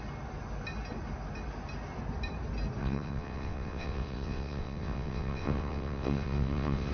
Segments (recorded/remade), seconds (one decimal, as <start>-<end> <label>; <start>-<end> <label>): 0.0-2.8 recorded; 2.8-6.9 remade